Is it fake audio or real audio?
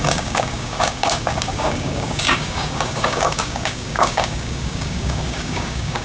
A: fake